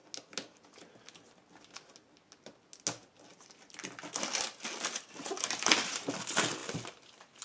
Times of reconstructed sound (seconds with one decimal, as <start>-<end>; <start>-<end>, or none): 3.3-6.1; 6.6-7.4